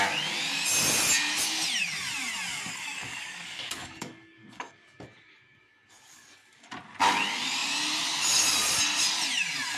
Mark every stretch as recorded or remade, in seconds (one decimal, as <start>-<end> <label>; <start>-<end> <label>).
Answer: 0.0-2.5 recorded; 2.5-6.7 remade; 6.7-9.8 recorded